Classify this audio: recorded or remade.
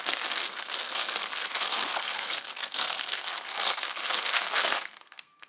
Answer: remade